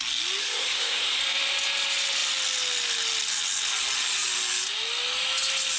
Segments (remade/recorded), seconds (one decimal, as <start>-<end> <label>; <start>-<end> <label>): 0.0-0.4 recorded; 0.4-1.2 remade; 1.2-5.8 recorded